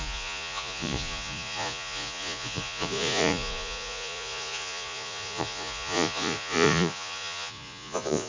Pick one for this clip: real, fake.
fake